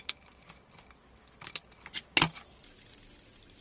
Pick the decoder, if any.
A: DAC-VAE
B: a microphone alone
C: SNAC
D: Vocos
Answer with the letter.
B